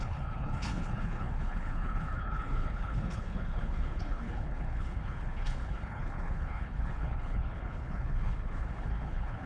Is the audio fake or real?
fake